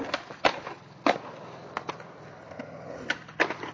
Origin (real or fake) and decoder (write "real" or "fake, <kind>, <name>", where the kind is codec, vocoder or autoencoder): real